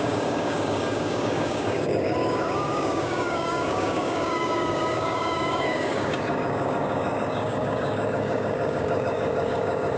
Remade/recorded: remade